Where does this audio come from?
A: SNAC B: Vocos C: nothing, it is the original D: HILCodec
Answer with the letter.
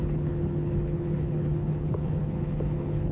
D